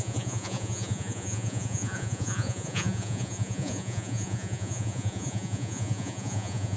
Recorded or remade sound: remade